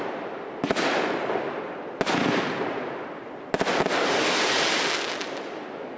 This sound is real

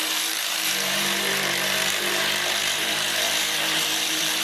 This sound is fake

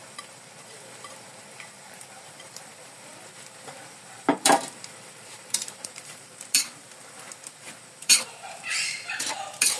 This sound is fake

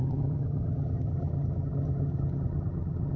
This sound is fake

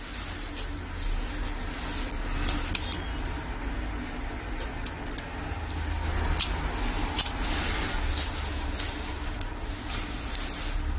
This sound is real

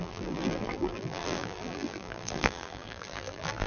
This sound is fake